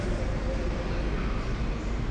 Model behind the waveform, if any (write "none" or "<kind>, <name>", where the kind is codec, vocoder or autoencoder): none